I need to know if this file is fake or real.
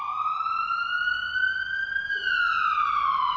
real